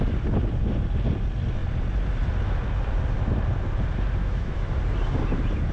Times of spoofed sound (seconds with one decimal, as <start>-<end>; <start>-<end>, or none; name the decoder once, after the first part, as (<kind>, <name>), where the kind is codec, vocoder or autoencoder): 4.2-4.7 (autoencoder, DAC-VAE)